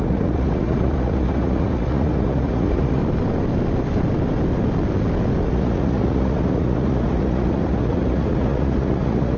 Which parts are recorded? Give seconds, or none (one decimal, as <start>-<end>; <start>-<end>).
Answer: 3.0-5.5